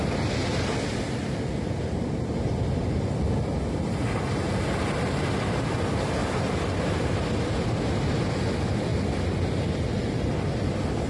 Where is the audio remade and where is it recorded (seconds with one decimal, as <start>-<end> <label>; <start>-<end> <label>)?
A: 0.0-6.2 recorded; 6.2-7.4 remade; 7.4-11.1 recorded